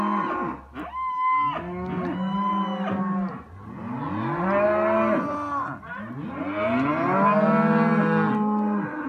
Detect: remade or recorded recorded